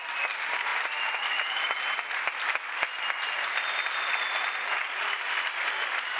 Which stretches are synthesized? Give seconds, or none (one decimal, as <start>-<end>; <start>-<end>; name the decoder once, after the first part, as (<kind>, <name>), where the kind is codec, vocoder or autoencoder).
none